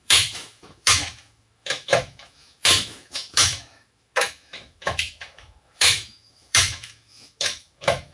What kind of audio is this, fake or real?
fake